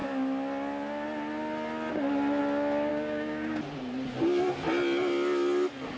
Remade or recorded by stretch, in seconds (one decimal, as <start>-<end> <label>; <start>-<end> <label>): 0.0-2.9 recorded; 2.9-3.6 remade; 3.6-6.0 recorded

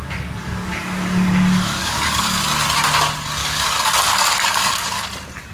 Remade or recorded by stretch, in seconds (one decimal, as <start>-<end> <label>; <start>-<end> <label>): 0.0-2.4 remade; 2.4-3.4 recorded; 3.4-4.0 remade; 4.0-4.5 recorded; 4.5-5.1 remade; 5.1-5.5 recorded

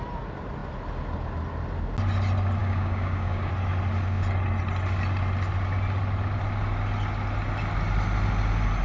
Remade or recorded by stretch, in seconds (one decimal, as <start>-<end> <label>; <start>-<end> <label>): 0.0-2.6 recorded; 2.6-3.5 remade; 3.5-8.8 recorded

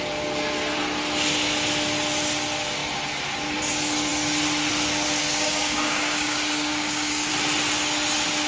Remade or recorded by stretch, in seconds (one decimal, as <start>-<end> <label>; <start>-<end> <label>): 0.0-5.2 recorded; 5.2-7.3 remade; 7.3-8.5 recorded